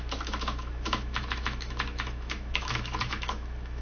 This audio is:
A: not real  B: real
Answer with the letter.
A